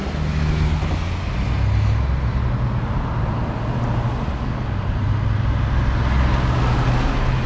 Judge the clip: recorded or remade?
recorded